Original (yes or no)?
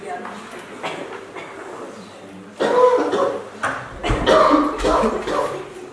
yes